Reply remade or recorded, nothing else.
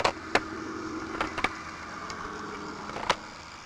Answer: recorded